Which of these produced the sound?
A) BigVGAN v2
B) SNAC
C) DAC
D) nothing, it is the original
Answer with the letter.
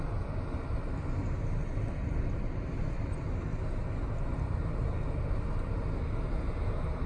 D